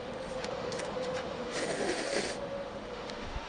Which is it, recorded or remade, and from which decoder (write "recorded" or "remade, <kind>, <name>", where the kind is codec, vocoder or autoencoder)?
remade, autoencoder, DAC-VAE